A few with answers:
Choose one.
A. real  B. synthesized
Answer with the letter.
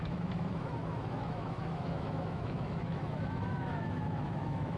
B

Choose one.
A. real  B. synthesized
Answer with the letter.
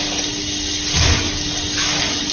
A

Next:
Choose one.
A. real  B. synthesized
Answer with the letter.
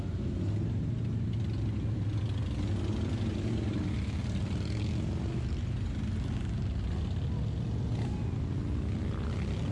A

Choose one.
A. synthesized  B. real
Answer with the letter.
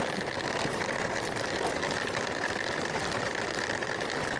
B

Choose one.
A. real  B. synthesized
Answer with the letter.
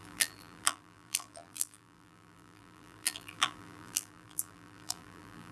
B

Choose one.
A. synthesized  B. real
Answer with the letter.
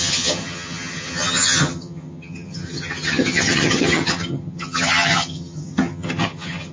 A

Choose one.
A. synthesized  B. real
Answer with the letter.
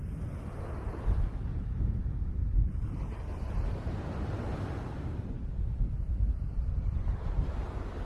A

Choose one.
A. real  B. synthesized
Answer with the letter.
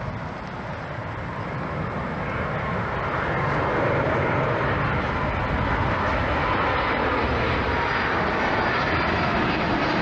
A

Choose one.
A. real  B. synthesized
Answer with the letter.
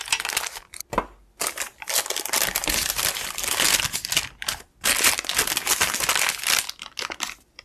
A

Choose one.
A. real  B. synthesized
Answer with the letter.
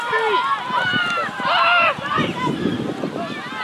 A